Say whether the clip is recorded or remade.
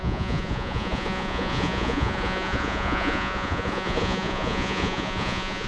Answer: remade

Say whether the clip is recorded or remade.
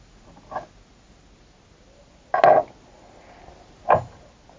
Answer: recorded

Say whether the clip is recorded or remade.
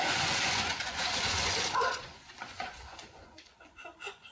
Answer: remade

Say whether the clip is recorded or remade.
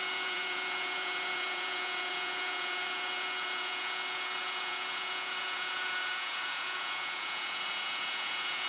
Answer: remade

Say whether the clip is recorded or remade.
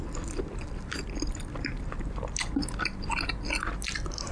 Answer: recorded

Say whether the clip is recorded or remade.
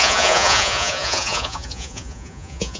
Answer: remade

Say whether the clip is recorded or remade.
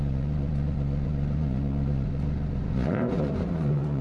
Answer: remade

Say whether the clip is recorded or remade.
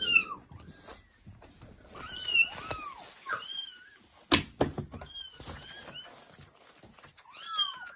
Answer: recorded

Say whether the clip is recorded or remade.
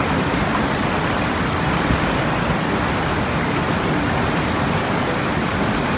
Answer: recorded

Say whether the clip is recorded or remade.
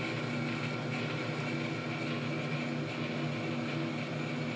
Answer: recorded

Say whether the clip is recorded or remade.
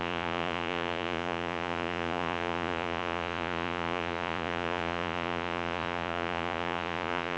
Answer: remade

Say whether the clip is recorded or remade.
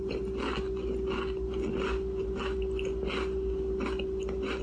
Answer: recorded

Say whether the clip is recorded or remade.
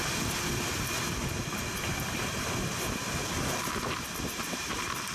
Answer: recorded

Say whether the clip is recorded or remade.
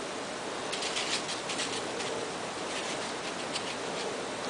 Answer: recorded